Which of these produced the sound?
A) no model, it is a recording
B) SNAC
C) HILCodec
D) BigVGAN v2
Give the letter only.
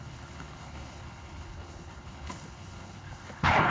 C